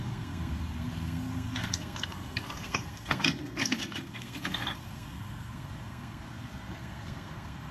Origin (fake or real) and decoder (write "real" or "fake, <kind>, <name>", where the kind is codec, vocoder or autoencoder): fake, codec, SNAC